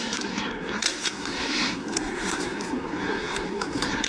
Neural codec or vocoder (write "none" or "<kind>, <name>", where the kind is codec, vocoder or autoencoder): codec, SNAC